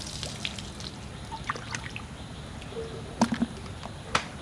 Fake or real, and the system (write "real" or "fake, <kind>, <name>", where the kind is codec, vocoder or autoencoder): real